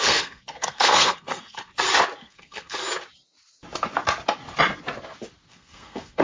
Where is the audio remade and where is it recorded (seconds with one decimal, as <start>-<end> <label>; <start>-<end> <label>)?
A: 0.0-1.7 remade; 1.7-2.2 recorded; 2.2-2.8 remade; 2.8-5.5 recorded; 5.5-6.2 remade